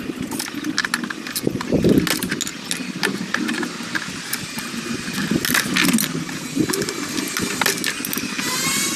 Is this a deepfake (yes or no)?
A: no